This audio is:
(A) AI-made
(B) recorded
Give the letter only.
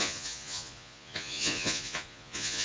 A